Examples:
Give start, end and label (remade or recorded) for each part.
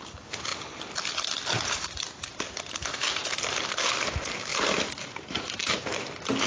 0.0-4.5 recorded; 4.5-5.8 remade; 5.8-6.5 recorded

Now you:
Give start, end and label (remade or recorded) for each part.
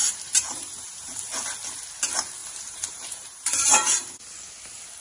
0.0-1.2 remade; 1.2-2.4 recorded; 2.4-4.2 remade; 4.2-5.0 recorded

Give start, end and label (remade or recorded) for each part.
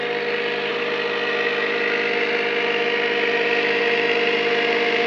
0.0-5.1 recorded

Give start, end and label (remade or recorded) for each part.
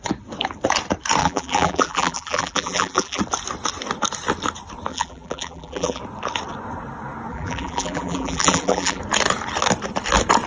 0.0-1.2 recorded; 1.2-3.2 remade; 3.2-4.9 recorded; 4.9-6.0 remade; 6.0-7.3 recorded; 7.3-9.0 remade; 9.0-10.5 recorded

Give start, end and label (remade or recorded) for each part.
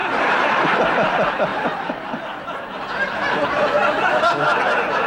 0.0-0.6 remade; 0.6-5.1 recorded